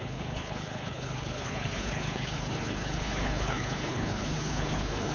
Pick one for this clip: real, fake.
fake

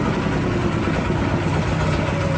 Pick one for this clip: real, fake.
real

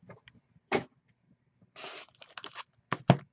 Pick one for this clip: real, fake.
real